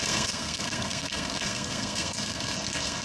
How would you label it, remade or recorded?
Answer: remade